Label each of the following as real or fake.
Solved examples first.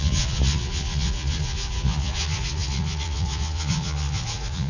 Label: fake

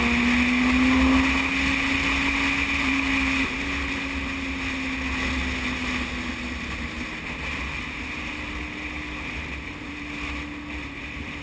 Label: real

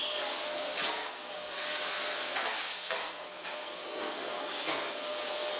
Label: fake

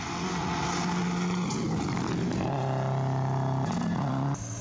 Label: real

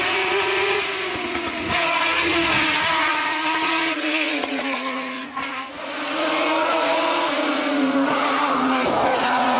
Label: fake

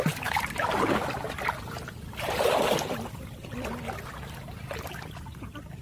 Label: real